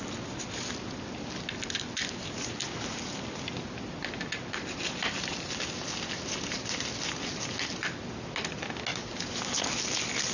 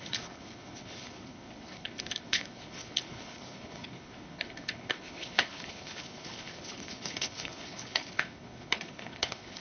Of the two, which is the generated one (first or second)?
second